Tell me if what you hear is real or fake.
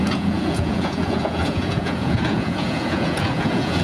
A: fake